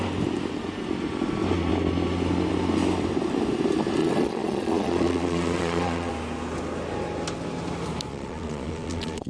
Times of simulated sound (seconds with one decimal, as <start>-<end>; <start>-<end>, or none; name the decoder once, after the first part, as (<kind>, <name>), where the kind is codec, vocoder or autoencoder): 4.0-6.1 (vocoder, Vocos); 8.1-9.3